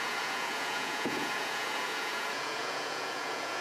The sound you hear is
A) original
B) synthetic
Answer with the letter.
B